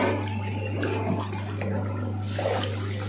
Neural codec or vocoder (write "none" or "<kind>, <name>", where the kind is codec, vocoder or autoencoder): none